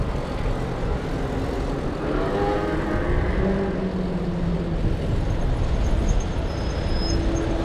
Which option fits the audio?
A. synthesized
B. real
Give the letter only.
B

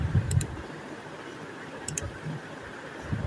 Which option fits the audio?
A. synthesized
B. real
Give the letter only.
A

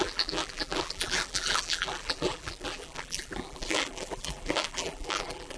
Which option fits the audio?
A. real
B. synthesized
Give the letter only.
B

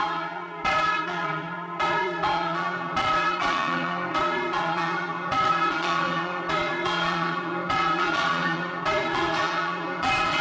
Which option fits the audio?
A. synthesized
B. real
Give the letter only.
A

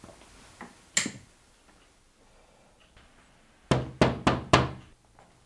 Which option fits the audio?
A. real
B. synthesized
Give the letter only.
A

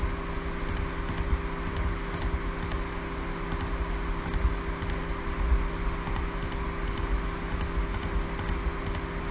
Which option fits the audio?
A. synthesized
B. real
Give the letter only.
B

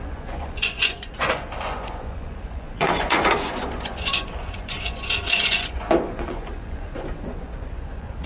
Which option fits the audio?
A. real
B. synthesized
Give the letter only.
B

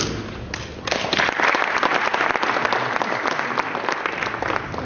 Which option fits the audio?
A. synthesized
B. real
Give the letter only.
B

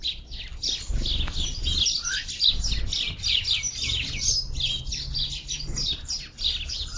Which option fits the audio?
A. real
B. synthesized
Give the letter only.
A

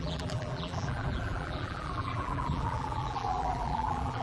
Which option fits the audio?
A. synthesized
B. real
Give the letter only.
A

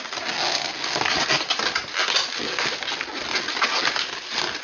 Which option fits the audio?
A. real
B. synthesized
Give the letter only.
A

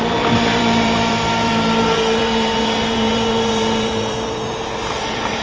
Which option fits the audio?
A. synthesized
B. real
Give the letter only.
A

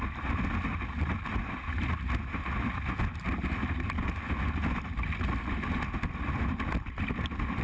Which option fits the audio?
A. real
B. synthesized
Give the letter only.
A